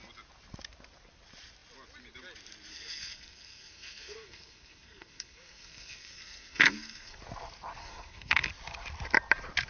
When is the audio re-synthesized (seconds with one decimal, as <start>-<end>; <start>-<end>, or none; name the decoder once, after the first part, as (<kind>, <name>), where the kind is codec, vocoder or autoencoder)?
2.7-7.2 (codec, SNAC); 7.8-8.5